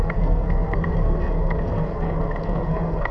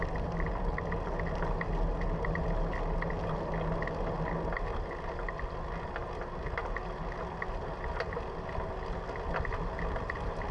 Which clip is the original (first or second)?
second